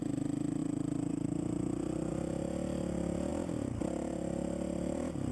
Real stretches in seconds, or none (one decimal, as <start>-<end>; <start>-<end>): 0.0-5.3